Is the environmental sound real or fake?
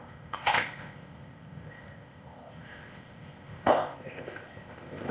fake